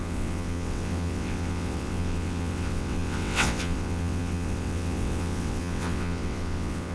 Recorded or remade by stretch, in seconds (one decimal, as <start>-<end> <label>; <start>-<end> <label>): 0.0-6.9 remade